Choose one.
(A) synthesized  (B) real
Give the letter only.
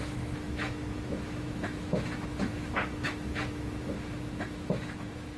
A